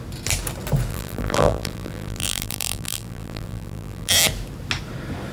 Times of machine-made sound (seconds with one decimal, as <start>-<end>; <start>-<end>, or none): 0.9-4.1